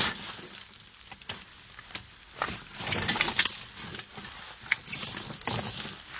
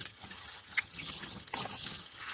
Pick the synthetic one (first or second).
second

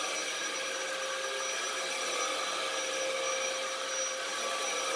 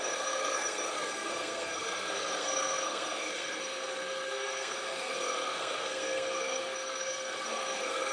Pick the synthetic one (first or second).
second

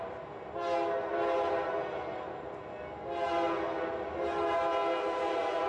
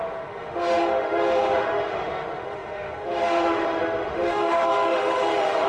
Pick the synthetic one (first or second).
second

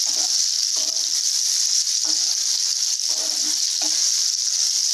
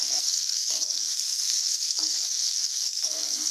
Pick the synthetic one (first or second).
second